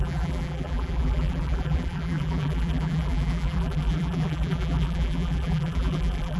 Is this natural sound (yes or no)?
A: no